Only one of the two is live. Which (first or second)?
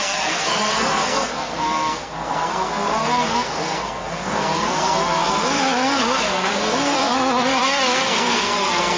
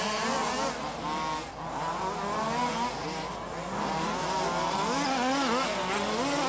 second